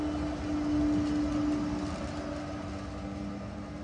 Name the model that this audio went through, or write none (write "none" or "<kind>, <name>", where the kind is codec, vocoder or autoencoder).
none